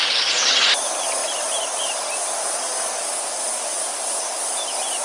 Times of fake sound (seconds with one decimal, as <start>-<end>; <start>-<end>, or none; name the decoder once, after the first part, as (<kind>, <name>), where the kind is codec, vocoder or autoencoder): none